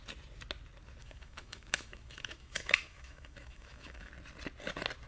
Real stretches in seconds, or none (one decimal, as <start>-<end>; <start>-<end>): 0.0-1.0; 4.1-5.1